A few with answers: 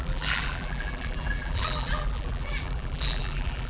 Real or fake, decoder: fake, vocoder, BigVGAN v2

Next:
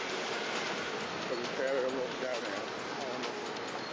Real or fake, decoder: real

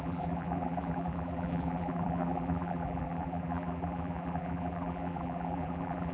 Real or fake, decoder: fake, vocoder, BigVGAN v2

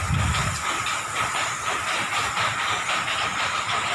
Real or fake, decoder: fake, vocoder, BigVGAN v2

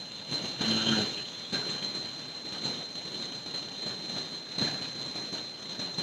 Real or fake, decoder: real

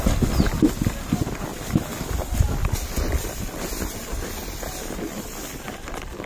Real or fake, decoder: real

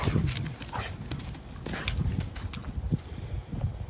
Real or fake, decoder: real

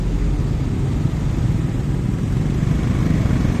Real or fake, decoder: real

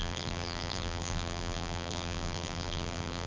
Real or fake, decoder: fake, vocoder, BigVGAN v2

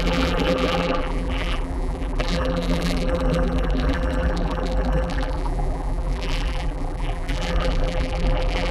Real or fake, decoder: fake, vocoder, BigVGAN v2